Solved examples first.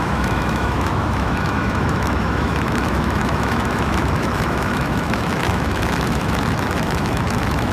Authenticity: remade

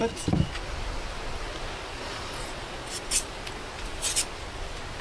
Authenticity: recorded